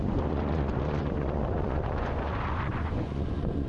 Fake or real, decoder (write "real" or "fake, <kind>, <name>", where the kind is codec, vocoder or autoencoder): fake, vocoder, Vocos